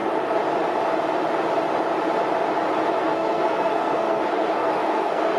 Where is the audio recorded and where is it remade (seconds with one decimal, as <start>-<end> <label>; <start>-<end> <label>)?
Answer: 0.0-3.0 recorded; 3.0-5.4 remade